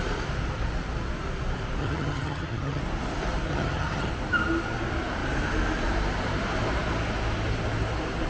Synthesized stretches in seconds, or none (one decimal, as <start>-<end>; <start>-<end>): 1.8-2.8; 3.5-4.1